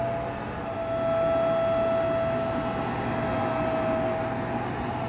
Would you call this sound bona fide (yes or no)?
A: yes